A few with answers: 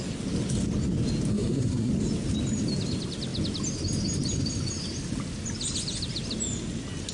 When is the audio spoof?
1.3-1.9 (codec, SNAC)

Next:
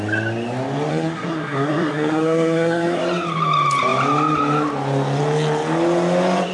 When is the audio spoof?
0.9-3.0 (codec, SNAC)

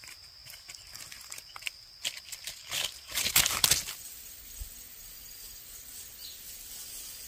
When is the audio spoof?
0.4-2.2 (vocoder, BigVGAN v2)